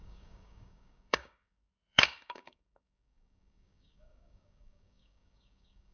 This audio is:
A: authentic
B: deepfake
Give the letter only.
B